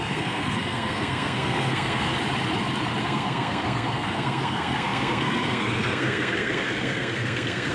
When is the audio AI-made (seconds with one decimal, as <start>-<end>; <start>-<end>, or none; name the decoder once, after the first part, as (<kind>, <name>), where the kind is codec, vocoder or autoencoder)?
0.0-2.1 (codec, SNAC); 3.0-7.7